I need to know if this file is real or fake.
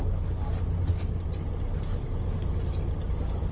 real